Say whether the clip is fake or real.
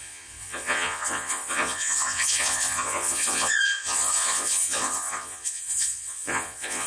fake